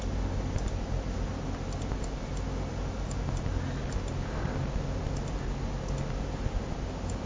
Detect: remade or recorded recorded